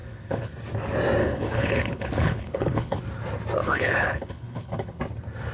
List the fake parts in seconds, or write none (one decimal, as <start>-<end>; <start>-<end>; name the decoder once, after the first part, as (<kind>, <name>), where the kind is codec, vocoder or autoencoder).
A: 0.0-0.5 (codec, HILCodec); 1.2-3.0; 3.6-5.0